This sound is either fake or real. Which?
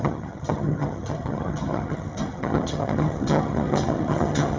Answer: fake